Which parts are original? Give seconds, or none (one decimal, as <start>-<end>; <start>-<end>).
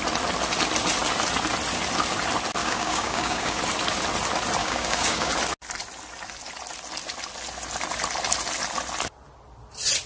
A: 0.0-2.6; 3.6-4.6; 5.3-10.1